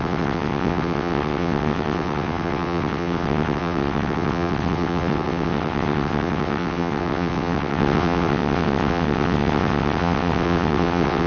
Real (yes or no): no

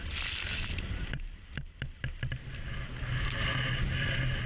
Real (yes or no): yes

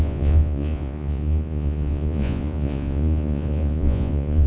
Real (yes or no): no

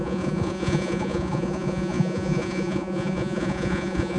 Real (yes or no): no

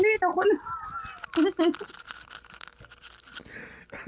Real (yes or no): yes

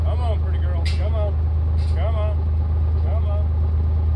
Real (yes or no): yes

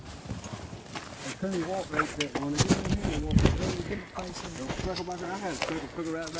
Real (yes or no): yes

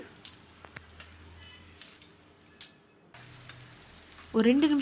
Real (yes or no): yes